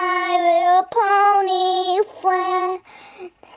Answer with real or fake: fake